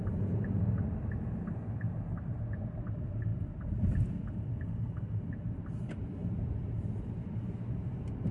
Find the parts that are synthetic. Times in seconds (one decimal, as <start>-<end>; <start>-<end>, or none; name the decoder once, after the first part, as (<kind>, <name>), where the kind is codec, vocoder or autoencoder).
0.0-8.3 (vocoder, BigVGAN v2)